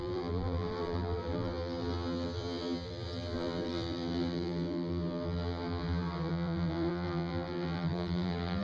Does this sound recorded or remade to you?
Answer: remade